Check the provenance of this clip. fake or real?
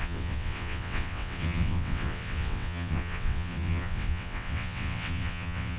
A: fake